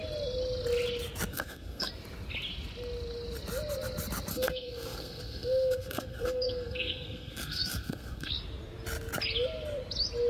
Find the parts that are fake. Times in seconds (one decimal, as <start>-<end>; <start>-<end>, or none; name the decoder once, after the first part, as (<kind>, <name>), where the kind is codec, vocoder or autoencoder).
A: 1.3-1.9 (codec, SNAC); 4.3-8.3